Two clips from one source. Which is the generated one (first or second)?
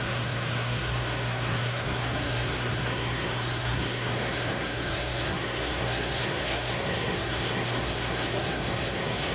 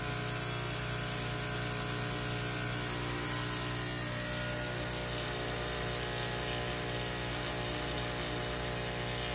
first